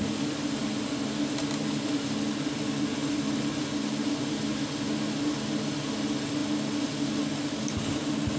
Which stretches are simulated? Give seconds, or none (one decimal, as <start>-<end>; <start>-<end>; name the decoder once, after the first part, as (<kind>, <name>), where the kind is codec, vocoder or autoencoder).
none